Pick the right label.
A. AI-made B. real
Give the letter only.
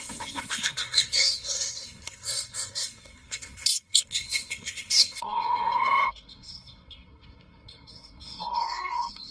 A